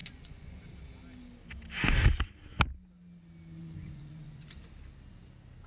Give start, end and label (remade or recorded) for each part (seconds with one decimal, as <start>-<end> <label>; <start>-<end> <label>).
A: 0.0-0.6 remade; 0.6-3.6 recorded; 3.6-4.5 remade; 4.5-5.7 recorded